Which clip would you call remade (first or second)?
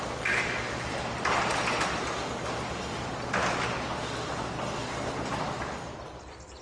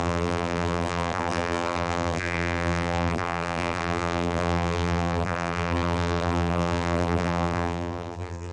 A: second